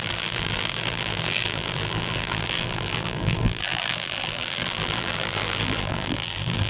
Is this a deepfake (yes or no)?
yes